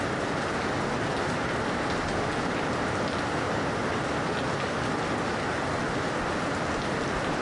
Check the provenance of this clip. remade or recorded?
recorded